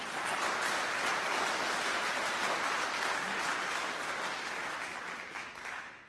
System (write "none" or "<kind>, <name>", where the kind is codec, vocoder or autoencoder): none